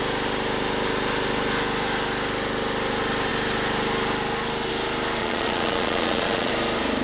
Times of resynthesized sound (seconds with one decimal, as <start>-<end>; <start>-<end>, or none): 5.2-6.5